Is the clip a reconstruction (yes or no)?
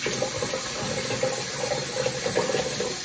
no